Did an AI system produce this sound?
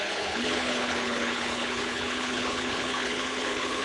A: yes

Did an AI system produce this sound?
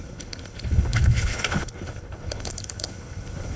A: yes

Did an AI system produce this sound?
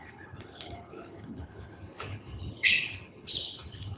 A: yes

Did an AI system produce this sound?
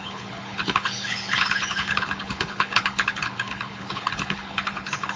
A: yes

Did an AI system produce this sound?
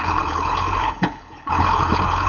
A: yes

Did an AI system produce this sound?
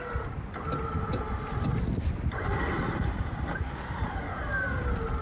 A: no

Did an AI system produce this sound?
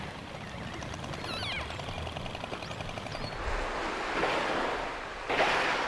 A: no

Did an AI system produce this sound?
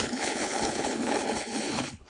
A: yes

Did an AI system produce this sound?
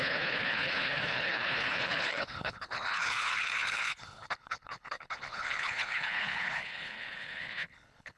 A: yes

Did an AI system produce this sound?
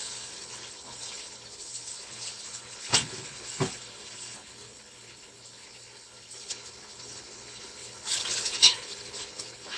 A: yes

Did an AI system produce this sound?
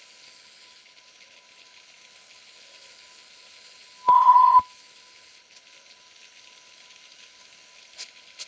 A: yes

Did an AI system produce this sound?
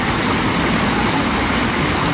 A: no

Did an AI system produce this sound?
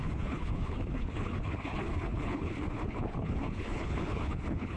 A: yes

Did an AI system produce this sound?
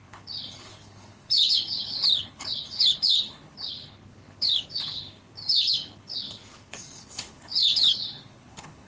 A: yes